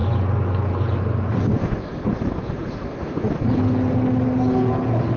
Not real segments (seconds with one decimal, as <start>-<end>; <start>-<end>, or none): none